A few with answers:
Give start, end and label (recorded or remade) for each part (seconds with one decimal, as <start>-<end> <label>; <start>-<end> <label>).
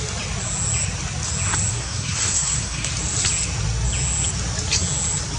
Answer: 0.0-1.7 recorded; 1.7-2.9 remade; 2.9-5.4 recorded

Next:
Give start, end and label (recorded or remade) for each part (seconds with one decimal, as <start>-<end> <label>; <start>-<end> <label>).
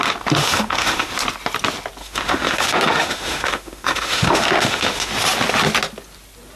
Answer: 0.0-0.4 recorded; 0.4-1.1 remade; 1.1-2.0 recorded; 2.0-5.1 remade; 5.1-6.6 recorded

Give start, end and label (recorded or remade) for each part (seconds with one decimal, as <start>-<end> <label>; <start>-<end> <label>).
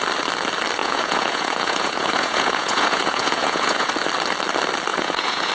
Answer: 0.0-0.8 recorded; 0.8-3.9 remade; 3.9-4.9 recorded; 4.9-5.5 remade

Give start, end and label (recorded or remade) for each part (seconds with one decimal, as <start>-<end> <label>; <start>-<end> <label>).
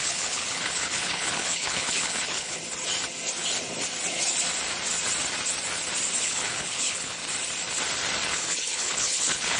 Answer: 0.0-2.6 remade; 2.6-6.2 recorded; 6.2-7.2 remade; 7.2-8.3 recorded; 8.3-9.6 remade